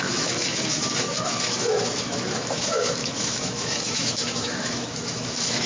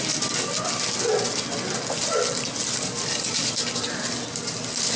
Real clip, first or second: second